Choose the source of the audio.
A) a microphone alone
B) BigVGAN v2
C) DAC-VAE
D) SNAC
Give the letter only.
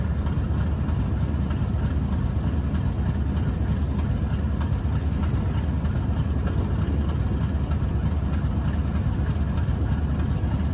A